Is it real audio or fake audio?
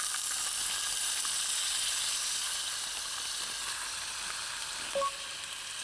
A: real